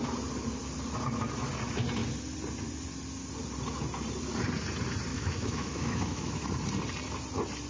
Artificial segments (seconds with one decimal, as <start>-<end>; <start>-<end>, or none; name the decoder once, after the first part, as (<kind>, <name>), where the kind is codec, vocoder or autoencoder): 5.1-6.4 (autoencoder, DAC-VAE)